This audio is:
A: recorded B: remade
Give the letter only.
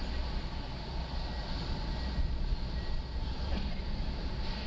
A